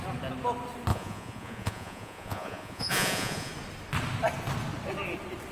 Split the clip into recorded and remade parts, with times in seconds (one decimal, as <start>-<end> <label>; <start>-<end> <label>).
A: 0.0-0.9 recorded; 0.9-3.5 remade; 3.5-5.5 recorded